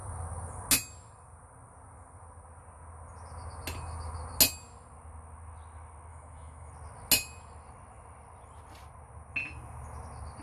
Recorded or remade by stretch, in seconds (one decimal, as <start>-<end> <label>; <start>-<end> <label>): 0.0-6.1 recorded; 6.1-6.7 remade; 6.7-10.4 recorded